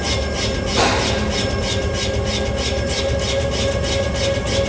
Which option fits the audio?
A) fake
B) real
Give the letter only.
B